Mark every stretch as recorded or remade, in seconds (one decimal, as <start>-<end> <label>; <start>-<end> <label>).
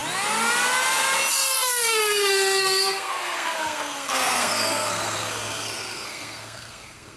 0.0-1.3 recorded; 1.3-7.2 remade